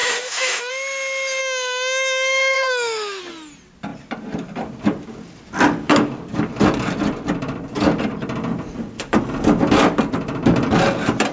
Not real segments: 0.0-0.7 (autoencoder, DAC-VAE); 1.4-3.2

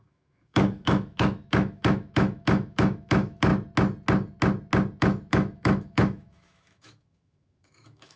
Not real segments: 0.0-3.5 (autoencoder, DAC-VAE); 5.0-8.2